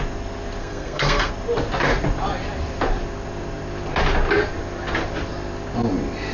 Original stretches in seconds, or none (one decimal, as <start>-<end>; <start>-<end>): 0.0-0.6; 1.3-6.3